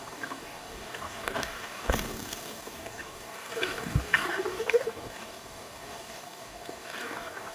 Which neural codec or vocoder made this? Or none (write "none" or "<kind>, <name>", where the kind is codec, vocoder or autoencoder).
codec, DAC